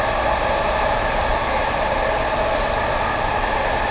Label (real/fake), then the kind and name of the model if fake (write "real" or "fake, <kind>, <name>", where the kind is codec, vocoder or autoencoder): real